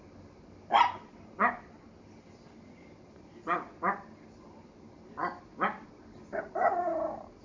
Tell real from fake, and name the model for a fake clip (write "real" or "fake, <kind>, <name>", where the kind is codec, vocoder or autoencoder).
real